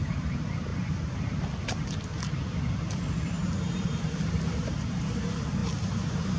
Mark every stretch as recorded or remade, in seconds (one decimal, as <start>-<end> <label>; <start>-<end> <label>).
0.0-0.7 remade; 0.7-1.6 recorded; 1.6-2.1 remade; 2.1-3.2 recorded; 3.2-6.4 remade